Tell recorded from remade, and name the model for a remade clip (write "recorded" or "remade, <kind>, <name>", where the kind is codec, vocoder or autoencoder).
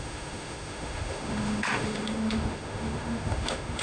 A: remade, autoencoder, DAC-VAE